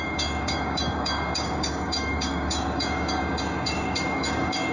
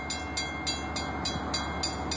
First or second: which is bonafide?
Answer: second